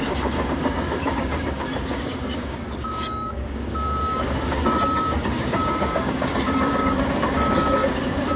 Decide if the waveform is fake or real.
fake